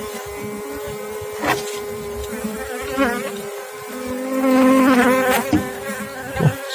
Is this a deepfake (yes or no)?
no